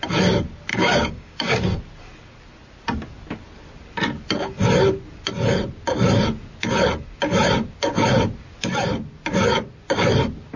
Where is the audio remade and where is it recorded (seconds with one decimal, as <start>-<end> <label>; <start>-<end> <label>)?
0.0-0.7 recorded; 0.7-1.8 remade; 1.8-10.6 recorded